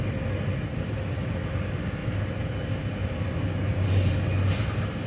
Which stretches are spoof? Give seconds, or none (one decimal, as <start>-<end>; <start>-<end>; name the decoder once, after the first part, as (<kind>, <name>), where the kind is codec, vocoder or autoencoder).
none